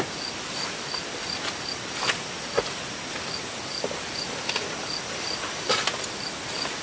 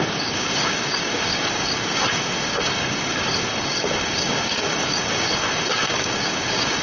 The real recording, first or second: first